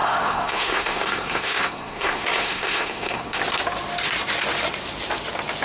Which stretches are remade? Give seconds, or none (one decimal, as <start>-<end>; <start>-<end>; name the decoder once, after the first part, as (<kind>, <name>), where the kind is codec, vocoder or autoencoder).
0.0-3.4 (codec, SNAC)